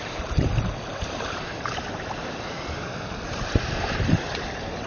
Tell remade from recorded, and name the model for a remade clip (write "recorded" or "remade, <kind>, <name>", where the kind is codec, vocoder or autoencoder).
remade, vocoder, BigVGAN v2